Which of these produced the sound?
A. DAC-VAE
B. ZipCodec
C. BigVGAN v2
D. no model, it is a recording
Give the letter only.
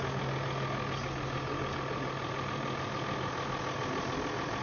D